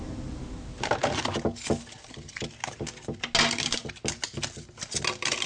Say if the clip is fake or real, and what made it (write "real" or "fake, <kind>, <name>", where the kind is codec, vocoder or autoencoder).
real